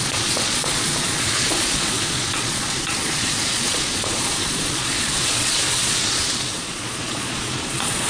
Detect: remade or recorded remade